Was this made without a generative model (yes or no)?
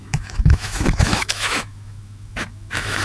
no